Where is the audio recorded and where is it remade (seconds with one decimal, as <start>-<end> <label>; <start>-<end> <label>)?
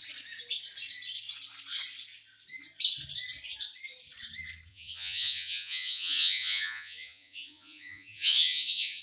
0.0-4.7 recorded; 4.7-9.0 remade